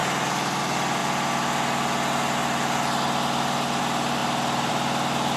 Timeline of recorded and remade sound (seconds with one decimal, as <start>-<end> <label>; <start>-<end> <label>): 0.0-5.4 recorded